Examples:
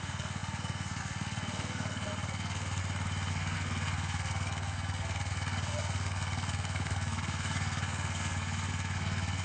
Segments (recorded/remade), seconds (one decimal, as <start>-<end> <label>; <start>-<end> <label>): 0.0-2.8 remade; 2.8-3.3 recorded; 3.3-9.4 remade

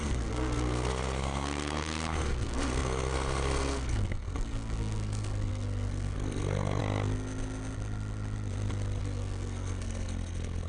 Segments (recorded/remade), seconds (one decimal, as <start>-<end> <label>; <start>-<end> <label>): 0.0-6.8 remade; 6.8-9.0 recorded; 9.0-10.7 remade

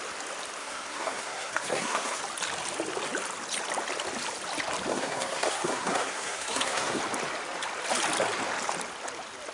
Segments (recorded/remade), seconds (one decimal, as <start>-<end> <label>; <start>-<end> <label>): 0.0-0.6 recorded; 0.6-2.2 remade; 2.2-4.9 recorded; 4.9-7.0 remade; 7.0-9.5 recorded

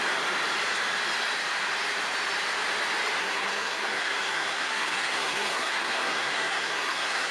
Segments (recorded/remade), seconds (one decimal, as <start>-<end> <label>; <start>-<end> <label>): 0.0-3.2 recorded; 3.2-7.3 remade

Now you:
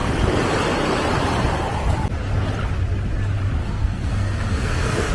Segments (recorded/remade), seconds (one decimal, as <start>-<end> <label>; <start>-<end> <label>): 0.0-3.6 recorded; 3.6-5.1 remade